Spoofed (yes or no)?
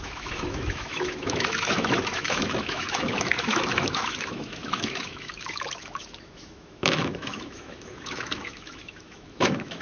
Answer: yes